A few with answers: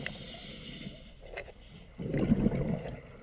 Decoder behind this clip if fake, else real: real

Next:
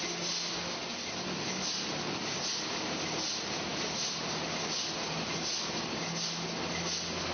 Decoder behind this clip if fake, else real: real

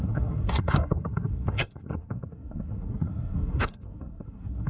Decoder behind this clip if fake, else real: fake, codec, SNAC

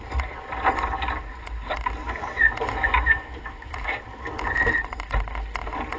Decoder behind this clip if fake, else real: real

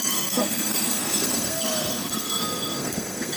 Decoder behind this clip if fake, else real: fake, codec, SNAC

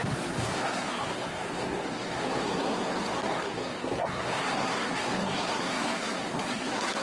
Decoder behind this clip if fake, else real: fake, codec, SNAC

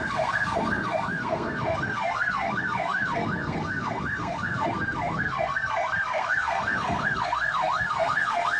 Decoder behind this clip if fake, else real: fake, codec, SNAC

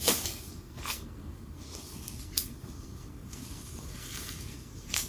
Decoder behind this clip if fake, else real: fake, codec, SNAC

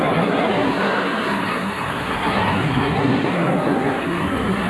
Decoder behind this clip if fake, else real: fake, codec, SNAC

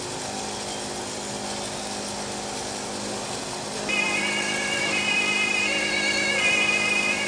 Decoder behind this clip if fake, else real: real